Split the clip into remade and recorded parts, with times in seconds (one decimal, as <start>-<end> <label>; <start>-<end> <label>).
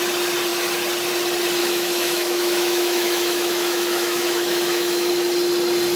0.0-1.6 recorded; 1.6-5.1 remade; 5.1-6.0 recorded